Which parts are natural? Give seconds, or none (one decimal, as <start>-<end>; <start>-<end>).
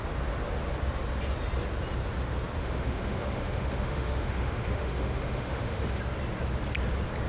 0.0-2.6; 6.0-7.3